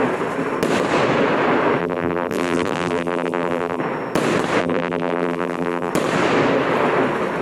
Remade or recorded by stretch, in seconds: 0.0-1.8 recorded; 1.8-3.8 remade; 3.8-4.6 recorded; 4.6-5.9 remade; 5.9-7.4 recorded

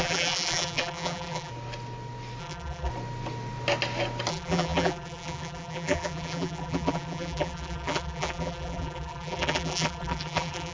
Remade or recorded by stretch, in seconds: 0.0-1.5 remade; 1.5-2.4 recorded; 2.4-2.9 remade; 2.9-4.3 recorded; 4.3-10.7 remade

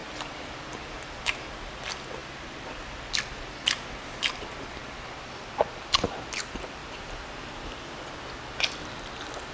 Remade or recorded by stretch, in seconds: 0.0-1.5 remade; 1.5-6.8 recorded; 6.8-8.0 remade; 8.0-9.5 recorded

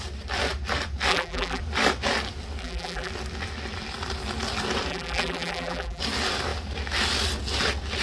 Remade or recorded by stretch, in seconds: 0.0-1.1 recorded; 1.1-1.6 remade; 1.6-2.6 recorded; 2.6-3.1 remade; 3.1-4.9 recorded; 4.9-6.0 remade; 6.0-8.0 recorded

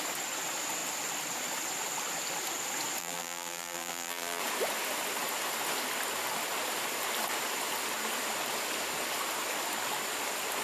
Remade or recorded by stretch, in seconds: 0.0-3.0 recorded; 3.0-4.4 remade; 4.4-10.6 recorded